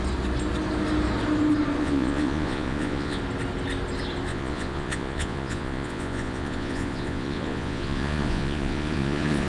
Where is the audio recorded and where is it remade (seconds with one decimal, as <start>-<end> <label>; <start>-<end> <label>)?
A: 0.0-1.8 recorded; 1.8-3.2 remade; 3.2-4.3 recorded; 4.3-9.5 remade